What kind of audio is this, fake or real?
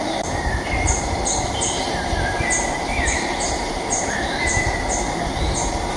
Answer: fake